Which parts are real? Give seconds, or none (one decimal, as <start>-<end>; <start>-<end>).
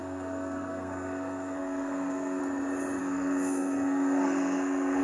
2.4-3.0